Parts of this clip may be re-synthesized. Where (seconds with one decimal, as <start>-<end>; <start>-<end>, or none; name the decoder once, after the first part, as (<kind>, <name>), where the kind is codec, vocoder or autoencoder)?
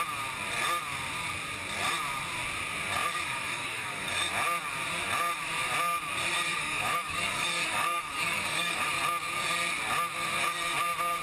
3.0-4.1 (codec, DAC); 6.5-8.8